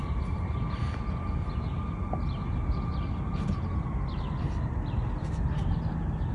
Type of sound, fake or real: real